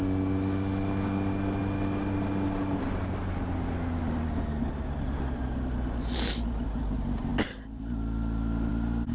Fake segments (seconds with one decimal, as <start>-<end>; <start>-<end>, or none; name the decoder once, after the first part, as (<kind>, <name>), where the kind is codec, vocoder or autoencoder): none